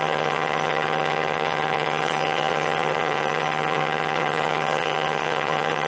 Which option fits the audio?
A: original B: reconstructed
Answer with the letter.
B